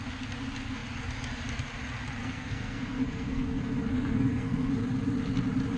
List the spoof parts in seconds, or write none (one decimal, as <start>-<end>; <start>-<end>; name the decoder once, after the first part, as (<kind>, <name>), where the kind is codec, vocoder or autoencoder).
2.2-4.7 (codec, SNAC)